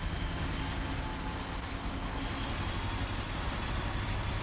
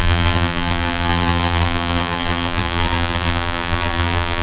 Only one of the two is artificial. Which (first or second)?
second